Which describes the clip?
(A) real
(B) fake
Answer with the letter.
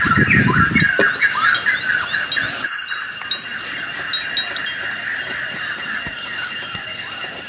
A